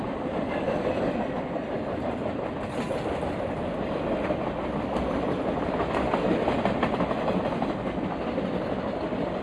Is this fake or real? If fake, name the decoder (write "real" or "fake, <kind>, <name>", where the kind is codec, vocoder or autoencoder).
real